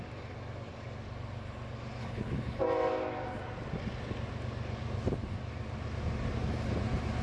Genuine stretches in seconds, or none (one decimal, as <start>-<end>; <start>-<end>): 0.0-2.0; 2.6-7.2